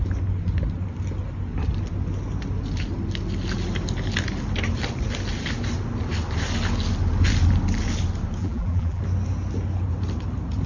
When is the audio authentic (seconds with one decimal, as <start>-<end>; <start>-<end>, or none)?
0.0-8.4; 9.0-10.7